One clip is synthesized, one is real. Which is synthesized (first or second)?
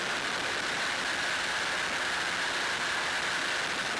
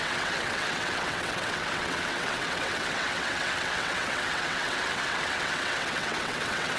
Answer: second